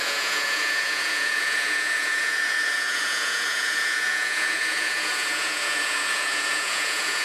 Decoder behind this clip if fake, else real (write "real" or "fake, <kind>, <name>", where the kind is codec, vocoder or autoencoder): fake, vocoder, Vocos